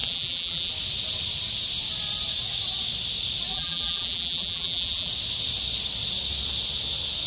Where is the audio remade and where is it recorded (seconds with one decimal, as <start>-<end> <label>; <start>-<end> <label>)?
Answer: 0.0-0.7 remade; 0.7-3.5 recorded; 3.5-5.1 remade; 5.1-7.3 recorded